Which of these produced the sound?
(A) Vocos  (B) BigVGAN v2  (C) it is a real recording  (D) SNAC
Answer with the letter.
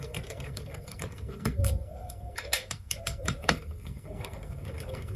D